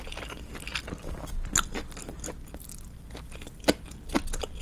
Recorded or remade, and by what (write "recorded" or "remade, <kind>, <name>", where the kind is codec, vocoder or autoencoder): recorded